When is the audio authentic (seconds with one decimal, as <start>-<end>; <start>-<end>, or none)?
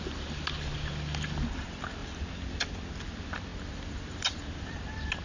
0.0-5.2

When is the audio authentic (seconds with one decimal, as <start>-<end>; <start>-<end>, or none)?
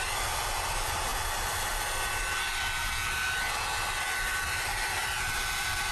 0.0-5.9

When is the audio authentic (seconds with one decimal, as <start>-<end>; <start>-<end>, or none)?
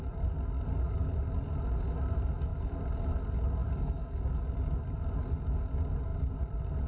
0.0-3.6; 4.4-6.9